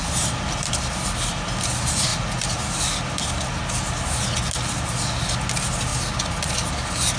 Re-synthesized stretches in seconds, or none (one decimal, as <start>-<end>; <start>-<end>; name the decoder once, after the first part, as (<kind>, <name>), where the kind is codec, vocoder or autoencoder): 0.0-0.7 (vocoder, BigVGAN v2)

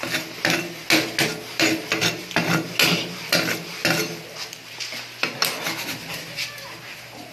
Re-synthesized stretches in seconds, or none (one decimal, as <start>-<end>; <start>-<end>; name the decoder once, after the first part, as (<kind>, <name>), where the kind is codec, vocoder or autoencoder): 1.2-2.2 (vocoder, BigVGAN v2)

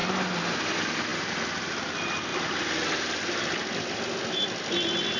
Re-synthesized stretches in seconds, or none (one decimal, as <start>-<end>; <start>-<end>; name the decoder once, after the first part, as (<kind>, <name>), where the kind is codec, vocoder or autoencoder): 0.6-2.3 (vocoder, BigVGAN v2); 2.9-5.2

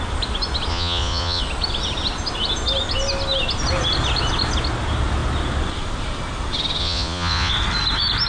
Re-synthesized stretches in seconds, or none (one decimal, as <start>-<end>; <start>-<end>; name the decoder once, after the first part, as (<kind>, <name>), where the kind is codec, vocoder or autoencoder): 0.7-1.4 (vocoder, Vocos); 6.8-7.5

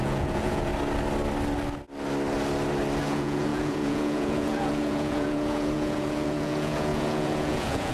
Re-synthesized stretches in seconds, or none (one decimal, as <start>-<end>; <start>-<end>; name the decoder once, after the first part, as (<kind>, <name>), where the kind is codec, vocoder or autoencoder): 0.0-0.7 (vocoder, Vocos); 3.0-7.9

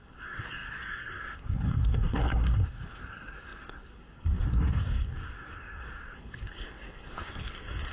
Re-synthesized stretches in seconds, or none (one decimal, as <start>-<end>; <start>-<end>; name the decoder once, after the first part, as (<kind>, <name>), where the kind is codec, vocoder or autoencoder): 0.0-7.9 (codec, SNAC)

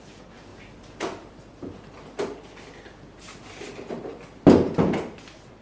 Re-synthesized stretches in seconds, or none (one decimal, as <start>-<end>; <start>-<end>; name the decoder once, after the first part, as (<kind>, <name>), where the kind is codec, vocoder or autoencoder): none

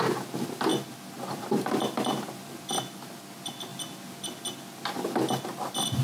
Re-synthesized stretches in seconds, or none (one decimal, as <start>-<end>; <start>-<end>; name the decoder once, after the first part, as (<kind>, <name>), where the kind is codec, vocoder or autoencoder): none